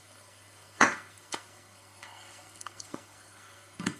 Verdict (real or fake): fake